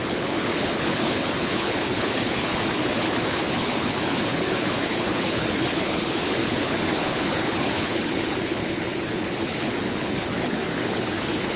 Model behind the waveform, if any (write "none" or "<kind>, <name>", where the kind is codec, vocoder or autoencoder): codec, HILCodec